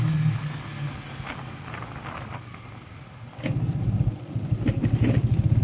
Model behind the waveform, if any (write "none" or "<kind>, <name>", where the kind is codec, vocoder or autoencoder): none